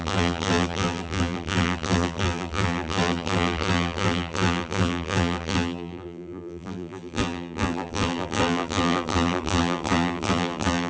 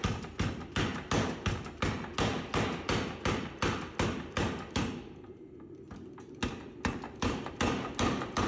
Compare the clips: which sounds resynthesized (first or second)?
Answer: first